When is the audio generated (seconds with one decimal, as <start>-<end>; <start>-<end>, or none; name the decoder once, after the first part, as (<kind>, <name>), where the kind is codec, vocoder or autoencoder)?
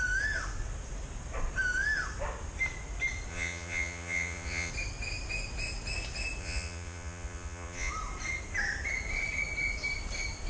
3.3-4.7 (vocoder, Vocos); 6.4-7.9